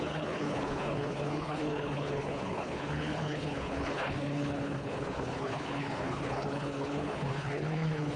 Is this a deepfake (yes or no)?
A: yes